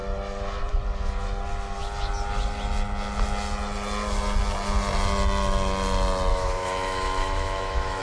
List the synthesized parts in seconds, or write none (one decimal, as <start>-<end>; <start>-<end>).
6.3-8.0